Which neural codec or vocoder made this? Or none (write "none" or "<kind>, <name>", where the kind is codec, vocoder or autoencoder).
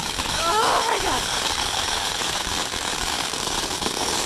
codec, DAC